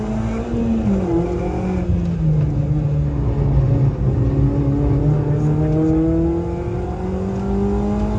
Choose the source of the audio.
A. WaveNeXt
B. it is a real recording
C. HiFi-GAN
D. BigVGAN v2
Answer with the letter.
B